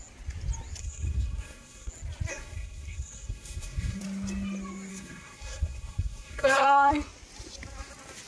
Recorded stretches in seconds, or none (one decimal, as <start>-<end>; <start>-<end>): 0.0-0.8; 1.9-2.3; 4.0-4.9; 6.9-8.3